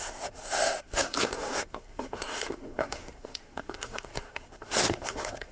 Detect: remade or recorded remade